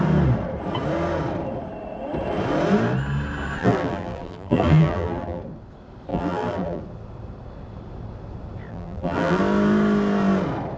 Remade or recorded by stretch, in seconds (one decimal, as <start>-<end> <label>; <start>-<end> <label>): 0.0-3.6 recorded; 3.6-5.4 remade; 5.4-6.1 recorded; 6.1-6.8 remade; 6.8-8.7 recorded; 8.7-9.4 remade; 9.4-10.8 recorded

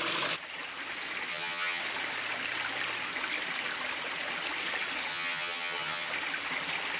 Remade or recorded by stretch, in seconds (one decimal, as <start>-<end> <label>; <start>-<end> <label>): 0.0-1.3 recorded; 1.3-1.8 remade; 1.8-5.1 recorded; 5.1-6.1 remade; 6.1-7.0 recorded

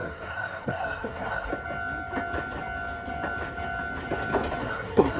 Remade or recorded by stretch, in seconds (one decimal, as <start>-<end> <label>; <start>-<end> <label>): 0.0-1.5 remade; 1.5-4.6 recorded; 4.6-5.2 remade

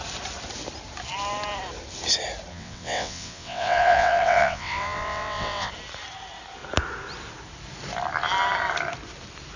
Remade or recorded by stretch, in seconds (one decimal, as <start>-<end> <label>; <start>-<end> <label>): 0.0-2.5 recorded; 2.5-5.7 remade; 5.7-9.6 recorded

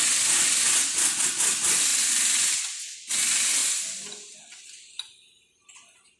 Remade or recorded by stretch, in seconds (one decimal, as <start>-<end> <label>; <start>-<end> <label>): 0.0-6.2 recorded

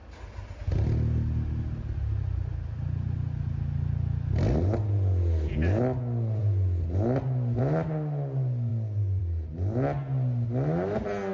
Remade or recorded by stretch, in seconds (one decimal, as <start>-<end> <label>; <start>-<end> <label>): 0.0-11.3 recorded

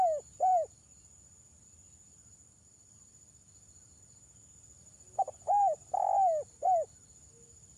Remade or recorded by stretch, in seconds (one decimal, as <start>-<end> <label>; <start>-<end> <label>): 0.0-7.8 recorded